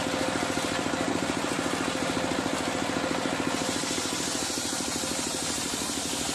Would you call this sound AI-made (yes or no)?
no